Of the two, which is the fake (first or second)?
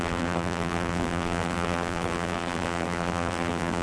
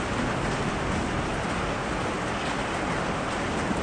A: first